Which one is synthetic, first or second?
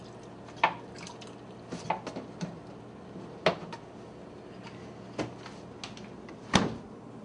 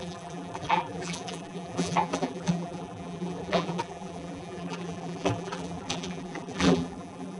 second